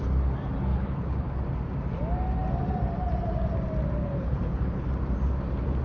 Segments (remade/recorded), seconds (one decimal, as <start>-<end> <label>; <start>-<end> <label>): 0.0-0.7 recorded; 0.7-1.4 remade; 1.4-4.0 recorded; 4.0-4.9 remade; 4.9-5.8 recorded